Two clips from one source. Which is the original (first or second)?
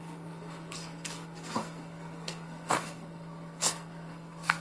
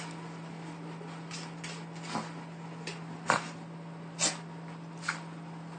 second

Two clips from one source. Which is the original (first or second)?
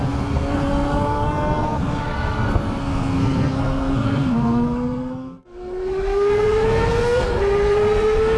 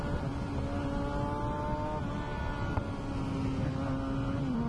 second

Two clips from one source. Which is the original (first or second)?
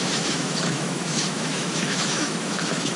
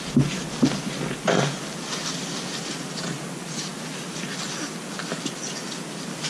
second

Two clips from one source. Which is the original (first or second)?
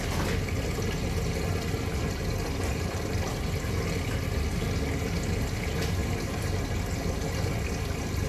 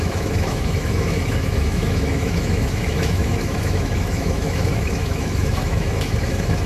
first